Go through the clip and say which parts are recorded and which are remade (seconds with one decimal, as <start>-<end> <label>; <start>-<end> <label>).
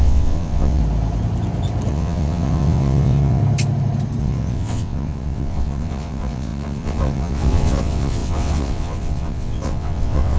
0.0-0.8 remade; 0.8-1.9 recorded; 1.9-3.4 remade; 3.4-4.2 recorded; 4.2-10.4 remade